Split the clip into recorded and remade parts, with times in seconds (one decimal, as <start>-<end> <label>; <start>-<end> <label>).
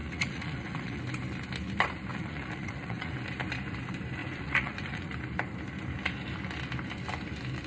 0.0-1.0 remade; 1.0-2.1 recorded; 2.1-3.1 remade; 3.1-4.2 recorded; 4.2-5.1 remade; 5.1-7.7 recorded